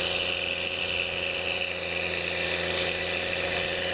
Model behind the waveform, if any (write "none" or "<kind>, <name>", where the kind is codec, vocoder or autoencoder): none